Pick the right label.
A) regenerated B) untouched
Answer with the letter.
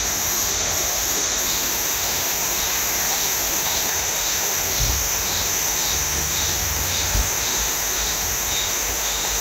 A